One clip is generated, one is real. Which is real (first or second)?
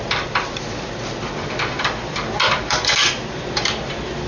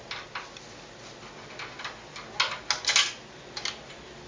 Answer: second